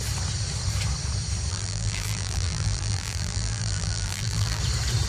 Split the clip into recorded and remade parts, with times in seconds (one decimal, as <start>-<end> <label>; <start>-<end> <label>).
0.0-1.5 recorded; 1.5-4.6 remade; 4.6-5.1 recorded